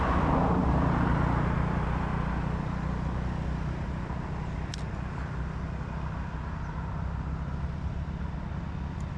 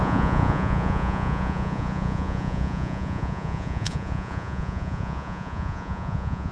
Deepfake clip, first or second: second